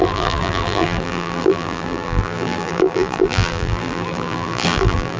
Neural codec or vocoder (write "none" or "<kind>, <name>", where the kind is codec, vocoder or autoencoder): vocoder, BigVGAN v2